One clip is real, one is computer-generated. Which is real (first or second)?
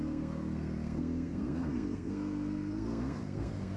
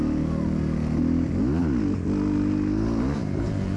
second